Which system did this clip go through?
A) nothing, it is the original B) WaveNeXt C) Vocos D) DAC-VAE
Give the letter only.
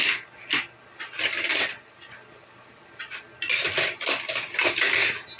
A